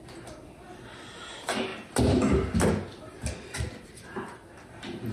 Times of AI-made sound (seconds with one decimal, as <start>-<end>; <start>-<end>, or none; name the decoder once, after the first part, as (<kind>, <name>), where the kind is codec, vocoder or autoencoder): none